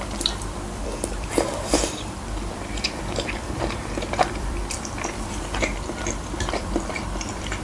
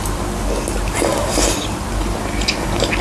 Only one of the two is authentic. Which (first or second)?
second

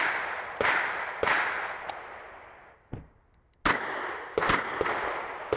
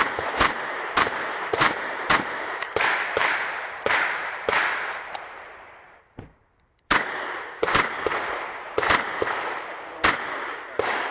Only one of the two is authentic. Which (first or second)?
first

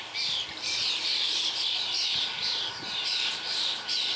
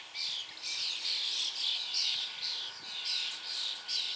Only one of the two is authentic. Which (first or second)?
second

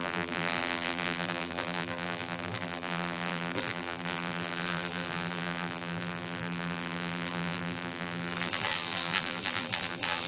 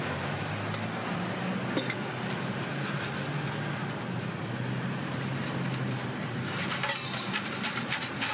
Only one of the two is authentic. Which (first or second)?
second